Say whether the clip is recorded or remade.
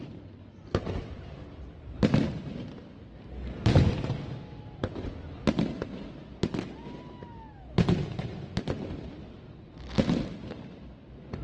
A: recorded